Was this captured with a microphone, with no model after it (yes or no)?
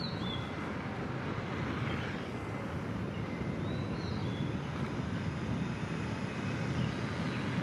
yes